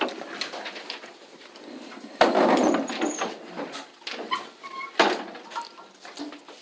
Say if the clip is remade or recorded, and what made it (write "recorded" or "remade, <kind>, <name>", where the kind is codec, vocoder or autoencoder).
remade, vocoder, BigVGAN v2